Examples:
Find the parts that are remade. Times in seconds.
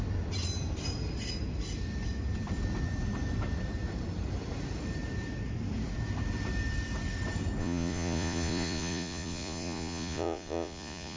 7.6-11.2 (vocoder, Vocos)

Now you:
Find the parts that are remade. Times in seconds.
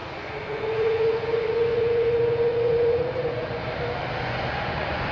0.0-3.6 (vocoder, Vocos); 4.2-5.1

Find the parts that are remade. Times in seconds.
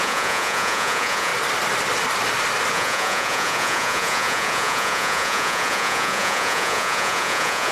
0.0-1.3 (vocoder, Vocos); 2.7-7.7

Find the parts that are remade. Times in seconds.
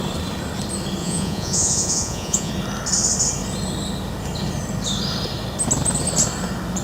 1.0-2.5 (vocoder, Vocos)